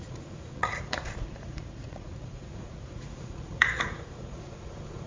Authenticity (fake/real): fake